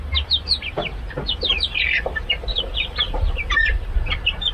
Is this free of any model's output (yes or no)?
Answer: no